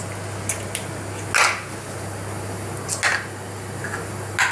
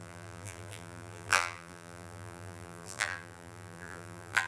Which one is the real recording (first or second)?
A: first